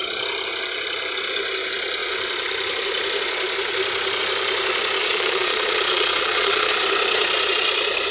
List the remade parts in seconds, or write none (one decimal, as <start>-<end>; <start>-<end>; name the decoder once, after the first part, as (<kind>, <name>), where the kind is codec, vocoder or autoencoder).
5.0-6.7 (vocoder, Vocos)